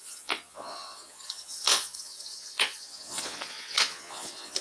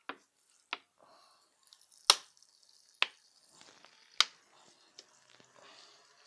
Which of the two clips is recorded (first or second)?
second